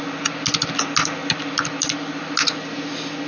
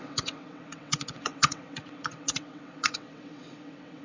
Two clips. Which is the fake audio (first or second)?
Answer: second